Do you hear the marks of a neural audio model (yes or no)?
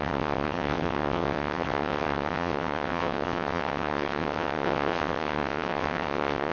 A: yes